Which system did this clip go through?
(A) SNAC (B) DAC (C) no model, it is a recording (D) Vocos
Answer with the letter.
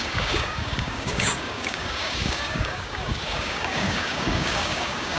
B